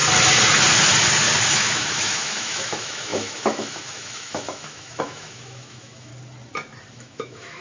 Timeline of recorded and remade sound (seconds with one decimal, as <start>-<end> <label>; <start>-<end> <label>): 0.0-1.5 recorded; 1.5-6.1 remade; 6.1-6.9 recorded; 6.9-7.6 remade